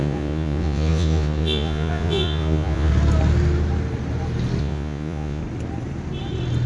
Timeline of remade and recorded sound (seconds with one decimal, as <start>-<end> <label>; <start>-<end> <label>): 0.0-2.9 remade; 2.9-4.6 recorded; 4.6-5.4 remade; 5.4-6.7 recorded